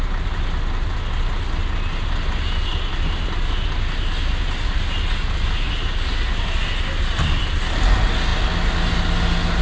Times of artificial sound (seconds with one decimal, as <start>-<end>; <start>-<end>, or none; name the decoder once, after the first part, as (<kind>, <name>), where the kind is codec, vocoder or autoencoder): none